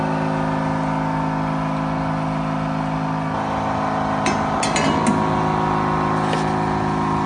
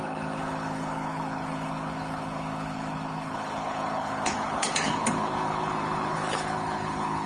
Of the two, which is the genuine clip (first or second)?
first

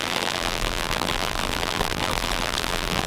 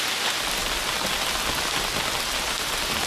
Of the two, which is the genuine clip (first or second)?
second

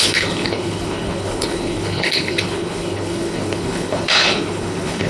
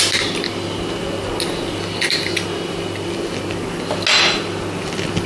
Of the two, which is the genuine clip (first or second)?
second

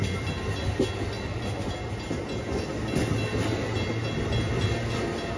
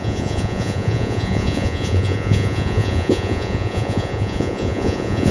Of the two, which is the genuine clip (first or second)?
first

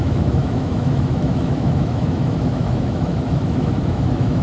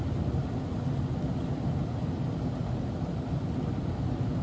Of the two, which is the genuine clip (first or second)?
second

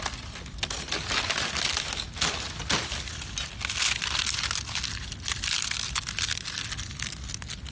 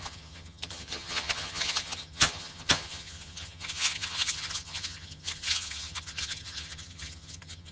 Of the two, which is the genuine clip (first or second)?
first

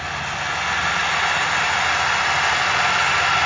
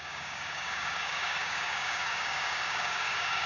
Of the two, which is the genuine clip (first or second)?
first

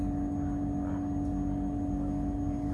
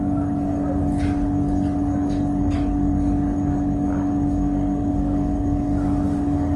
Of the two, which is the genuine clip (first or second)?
first